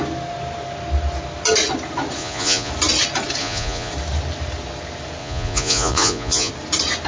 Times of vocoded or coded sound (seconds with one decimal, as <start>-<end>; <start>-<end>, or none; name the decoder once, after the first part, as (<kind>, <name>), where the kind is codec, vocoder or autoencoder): 2.2-2.7 (vocoder, Vocos); 3.4-3.9; 5.2-6.5